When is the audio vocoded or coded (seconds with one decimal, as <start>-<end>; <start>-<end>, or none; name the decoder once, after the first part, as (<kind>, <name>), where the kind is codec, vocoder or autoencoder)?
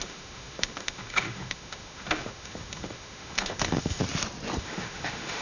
0.0-4.0 (autoencoder, DAC-VAE); 4.6-5.4